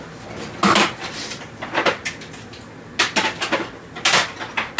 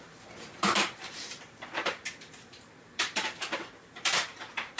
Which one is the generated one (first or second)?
second